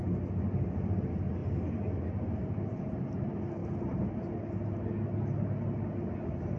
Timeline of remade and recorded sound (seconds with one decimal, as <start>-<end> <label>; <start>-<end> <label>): 0.0-6.6 recorded